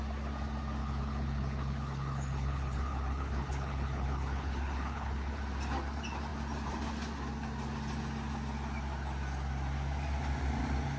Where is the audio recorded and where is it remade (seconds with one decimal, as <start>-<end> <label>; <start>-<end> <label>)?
0.0-0.8 recorded; 0.8-5.4 remade; 5.4-11.0 recorded